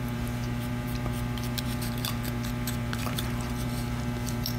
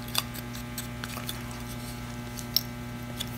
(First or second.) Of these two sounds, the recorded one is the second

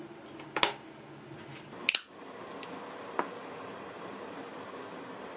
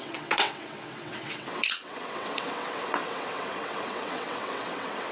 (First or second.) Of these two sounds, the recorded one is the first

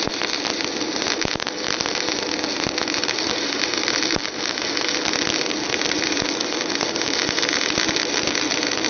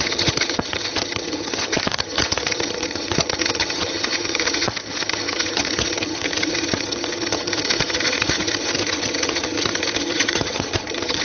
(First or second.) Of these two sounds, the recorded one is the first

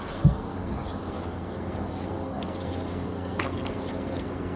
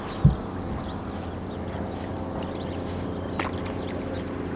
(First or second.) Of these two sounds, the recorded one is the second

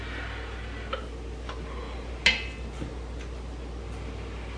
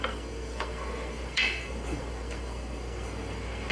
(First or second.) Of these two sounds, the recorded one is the first